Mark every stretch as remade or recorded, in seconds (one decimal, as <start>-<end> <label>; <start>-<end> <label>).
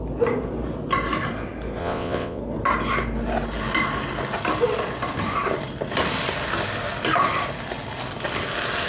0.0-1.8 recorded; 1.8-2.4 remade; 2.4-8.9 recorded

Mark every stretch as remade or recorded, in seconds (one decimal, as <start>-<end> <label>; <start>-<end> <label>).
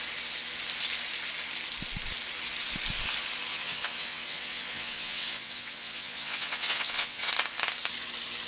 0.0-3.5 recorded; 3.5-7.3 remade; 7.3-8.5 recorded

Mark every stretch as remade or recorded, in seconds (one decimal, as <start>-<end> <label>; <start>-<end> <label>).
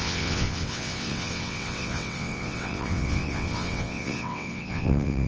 0.0-5.3 remade